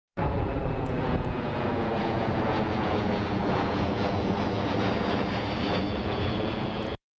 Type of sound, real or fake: fake